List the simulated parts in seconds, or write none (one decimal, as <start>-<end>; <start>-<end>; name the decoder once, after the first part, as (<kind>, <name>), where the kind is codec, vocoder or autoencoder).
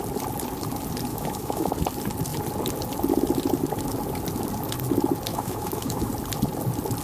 1.1-1.7 (autoencoder, DAC-VAE); 5.3-6.1